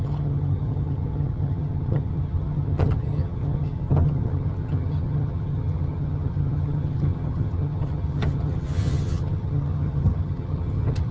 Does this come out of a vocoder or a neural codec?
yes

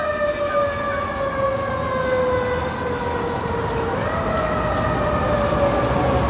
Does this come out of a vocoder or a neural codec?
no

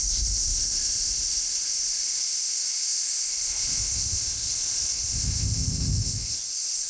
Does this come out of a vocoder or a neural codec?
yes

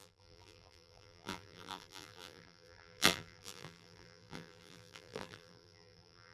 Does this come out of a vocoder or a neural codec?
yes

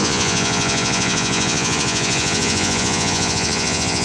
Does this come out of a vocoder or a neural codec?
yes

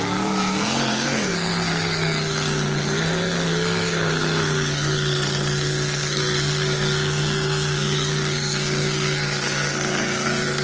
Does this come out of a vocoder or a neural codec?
yes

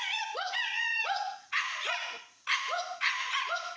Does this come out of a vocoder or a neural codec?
yes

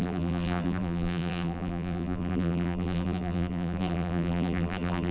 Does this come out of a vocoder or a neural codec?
yes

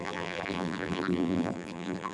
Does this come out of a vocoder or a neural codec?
yes